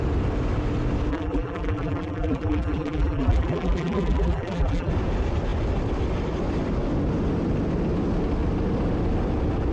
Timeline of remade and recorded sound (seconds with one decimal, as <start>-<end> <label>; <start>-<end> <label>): 0.0-1.1 recorded; 1.1-4.9 remade; 4.9-9.7 recorded

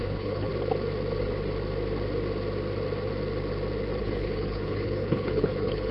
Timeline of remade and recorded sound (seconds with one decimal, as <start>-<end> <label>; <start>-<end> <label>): 0.0-0.5 remade; 0.5-4.0 recorded; 4.0-5.9 remade

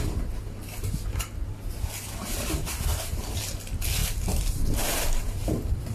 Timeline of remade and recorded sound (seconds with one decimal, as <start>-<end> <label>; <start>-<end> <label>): 0.0-2.2 recorded; 2.2-3.4 remade; 3.4-5.9 recorded

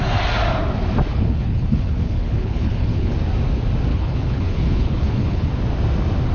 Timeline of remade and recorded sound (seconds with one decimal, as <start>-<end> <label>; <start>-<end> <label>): 0.0-1.1 recorded; 1.1-3.1 remade; 3.1-3.9 recorded; 3.9-5.5 remade; 5.5-6.3 recorded

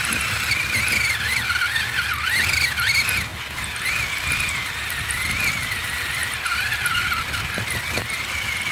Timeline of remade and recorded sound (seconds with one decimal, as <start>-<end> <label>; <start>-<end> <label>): 0.0-8.7 recorded

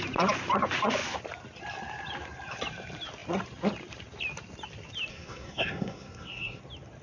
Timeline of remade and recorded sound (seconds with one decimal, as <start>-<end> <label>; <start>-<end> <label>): 0.0-5.1 recorded; 5.1-6.6 remade; 6.6-7.0 recorded

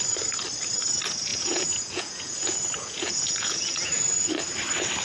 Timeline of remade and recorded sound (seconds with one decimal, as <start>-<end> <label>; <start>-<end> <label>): 0.0-1.3 recorded; 1.3-4.3 remade; 4.3-5.0 recorded

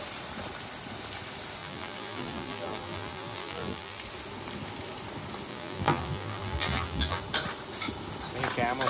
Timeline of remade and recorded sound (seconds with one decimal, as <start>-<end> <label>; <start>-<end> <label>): 0.0-1.6 recorded; 1.6-4.0 remade; 4.0-5.5 recorded; 5.5-7.2 remade; 7.2-8.9 recorded